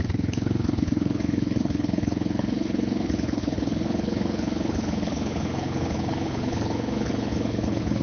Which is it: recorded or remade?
remade